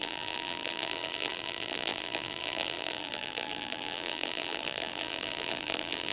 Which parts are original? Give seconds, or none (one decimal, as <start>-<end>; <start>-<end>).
none